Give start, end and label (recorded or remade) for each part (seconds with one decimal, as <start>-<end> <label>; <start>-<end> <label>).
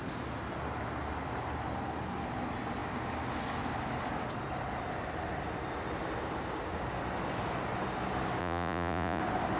0.0-8.4 recorded; 8.4-9.2 remade; 9.2-9.6 recorded